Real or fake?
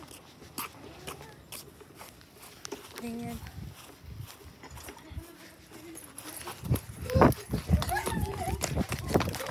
real